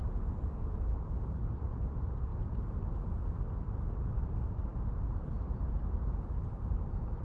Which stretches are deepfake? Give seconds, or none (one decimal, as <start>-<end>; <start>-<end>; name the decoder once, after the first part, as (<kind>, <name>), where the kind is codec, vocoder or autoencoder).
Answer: 0.9-1.6 (codec, DAC)